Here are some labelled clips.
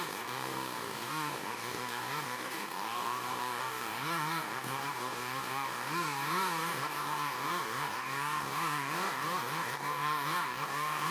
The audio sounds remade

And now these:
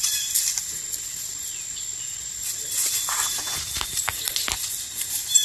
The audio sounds recorded